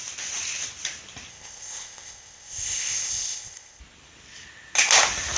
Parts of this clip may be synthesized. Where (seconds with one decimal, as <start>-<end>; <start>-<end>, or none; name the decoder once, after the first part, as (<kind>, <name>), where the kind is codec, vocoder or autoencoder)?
1.3-3.8 (codec, ZipCodec)